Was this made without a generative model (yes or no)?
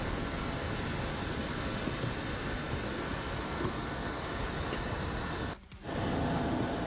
yes